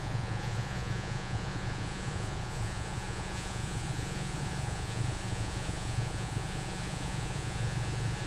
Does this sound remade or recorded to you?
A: remade